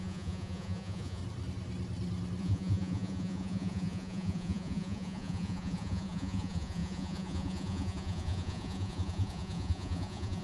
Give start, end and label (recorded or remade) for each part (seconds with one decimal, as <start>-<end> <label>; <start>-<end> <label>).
0.0-1.2 remade; 1.2-2.4 recorded; 2.4-10.4 remade